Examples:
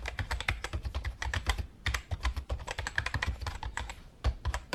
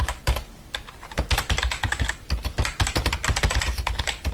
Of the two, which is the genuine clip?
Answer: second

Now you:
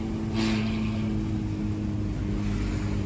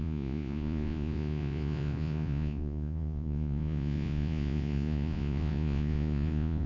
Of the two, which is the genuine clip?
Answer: first